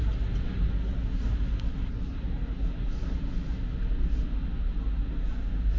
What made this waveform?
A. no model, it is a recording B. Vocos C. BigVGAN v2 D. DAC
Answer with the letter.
A